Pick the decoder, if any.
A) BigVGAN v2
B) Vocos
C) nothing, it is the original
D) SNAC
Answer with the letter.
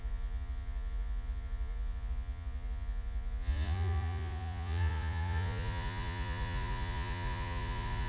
B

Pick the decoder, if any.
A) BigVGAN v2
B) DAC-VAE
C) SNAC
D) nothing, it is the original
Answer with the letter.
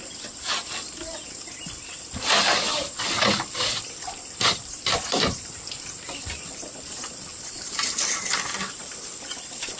D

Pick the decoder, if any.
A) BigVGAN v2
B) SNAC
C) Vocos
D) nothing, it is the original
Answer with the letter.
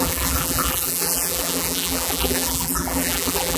A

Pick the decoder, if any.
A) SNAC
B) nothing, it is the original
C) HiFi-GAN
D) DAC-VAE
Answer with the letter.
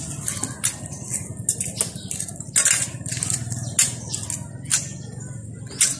B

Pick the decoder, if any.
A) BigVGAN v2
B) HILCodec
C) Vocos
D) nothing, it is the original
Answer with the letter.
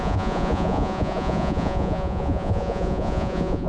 C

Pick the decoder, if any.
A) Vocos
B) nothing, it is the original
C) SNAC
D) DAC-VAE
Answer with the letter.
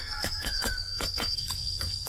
C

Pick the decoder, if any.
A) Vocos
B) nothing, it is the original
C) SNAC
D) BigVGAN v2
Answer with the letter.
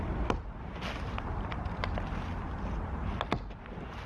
B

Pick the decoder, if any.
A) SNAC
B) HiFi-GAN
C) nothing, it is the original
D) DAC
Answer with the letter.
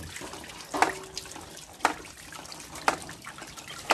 C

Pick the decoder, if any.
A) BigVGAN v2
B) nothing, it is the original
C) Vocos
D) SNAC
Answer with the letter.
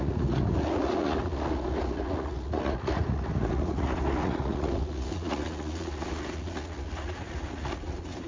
C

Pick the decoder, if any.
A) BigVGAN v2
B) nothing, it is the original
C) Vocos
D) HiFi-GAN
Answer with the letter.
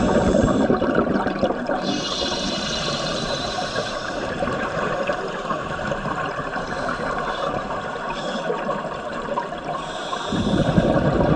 A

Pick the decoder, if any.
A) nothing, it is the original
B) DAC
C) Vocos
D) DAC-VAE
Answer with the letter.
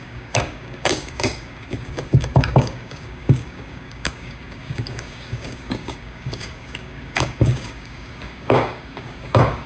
B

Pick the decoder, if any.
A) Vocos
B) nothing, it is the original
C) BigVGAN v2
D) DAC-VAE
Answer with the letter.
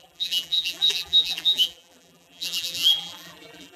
C